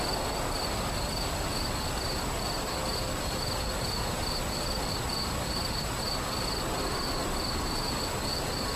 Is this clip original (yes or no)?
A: yes